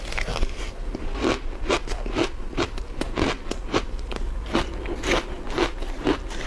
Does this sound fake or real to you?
real